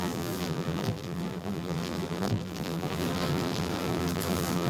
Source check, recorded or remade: remade